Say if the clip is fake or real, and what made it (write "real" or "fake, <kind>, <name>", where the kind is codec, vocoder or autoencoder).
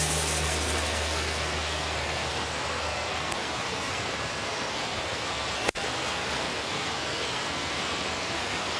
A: fake, codec, SNAC